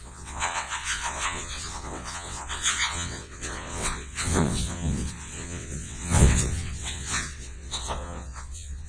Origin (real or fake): fake